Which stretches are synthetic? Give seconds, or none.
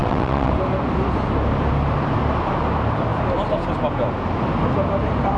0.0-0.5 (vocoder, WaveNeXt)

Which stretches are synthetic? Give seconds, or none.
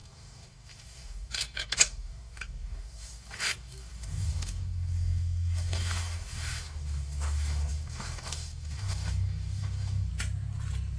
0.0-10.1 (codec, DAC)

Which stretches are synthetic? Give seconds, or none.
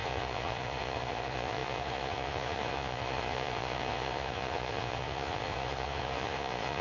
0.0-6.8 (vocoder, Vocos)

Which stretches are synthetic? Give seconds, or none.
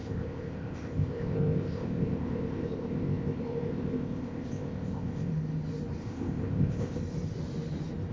0.0-5.3 (codec, ZipCodec); 6.0-7.0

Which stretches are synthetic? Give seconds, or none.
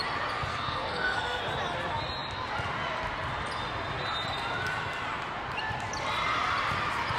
0.5-1.4 (codec, SNAC)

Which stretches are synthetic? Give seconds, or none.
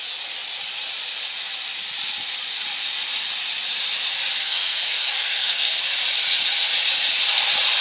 4.4-5.8 (codec, SNAC)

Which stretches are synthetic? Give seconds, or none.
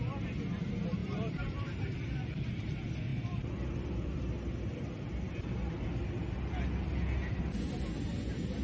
1.0-2.4 (vocoder, BigVGAN v2); 3.1-5.7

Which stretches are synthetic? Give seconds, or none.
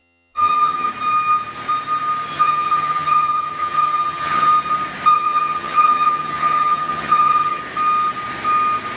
0.0-0.9 (vocoder, HiFi-GAN); 2.3-4.5; 5.1-7.6